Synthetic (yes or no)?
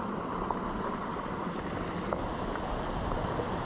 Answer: no